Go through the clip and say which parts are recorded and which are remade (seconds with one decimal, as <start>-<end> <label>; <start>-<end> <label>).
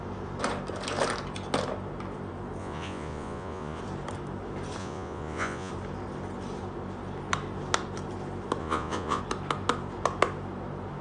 0.0-2.6 recorded; 2.6-3.8 remade; 3.8-4.8 recorded; 4.8-5.7 remade; 5.7-8.6 recorded; 8.6-9.2 remade; 9.2-11.0 recorded